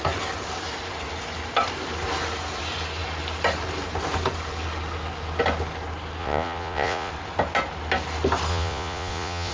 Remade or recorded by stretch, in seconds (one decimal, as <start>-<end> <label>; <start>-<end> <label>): 0.0-6.2 recorded; 6.2-7.1 remade; 7.1-8.5 recorded; 8.5-9.5 remade